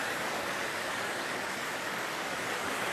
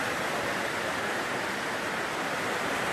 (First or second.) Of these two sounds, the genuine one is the second